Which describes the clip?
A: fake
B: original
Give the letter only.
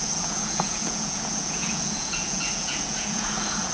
A